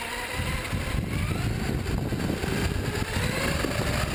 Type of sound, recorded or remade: recorded